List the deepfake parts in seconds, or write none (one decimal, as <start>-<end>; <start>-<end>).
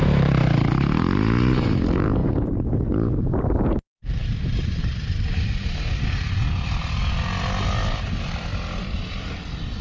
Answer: 0.0-0.7; 2.2-6.4